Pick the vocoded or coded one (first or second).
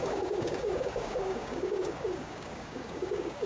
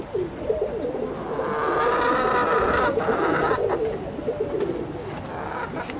first